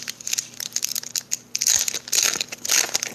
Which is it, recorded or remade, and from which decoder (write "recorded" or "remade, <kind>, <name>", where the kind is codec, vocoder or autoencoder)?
recorded